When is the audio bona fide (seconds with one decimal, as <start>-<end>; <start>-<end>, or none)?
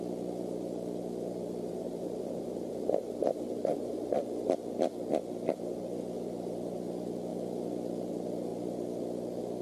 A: 0.0-1.7; 4.1-9.6